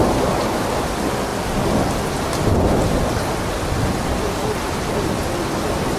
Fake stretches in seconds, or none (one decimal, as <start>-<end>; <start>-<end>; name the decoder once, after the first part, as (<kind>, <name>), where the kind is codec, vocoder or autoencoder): none